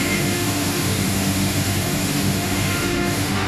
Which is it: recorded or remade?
remade